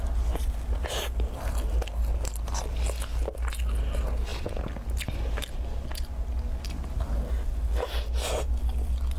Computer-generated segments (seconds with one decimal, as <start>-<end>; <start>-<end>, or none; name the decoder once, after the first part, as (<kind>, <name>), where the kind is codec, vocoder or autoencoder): none